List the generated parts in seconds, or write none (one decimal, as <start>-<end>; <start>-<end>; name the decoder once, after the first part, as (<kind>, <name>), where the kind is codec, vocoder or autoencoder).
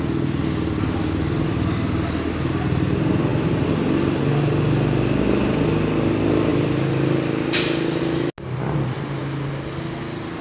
3.3-4.2 (vocoder, BigVGAN v2); 6.5-8.0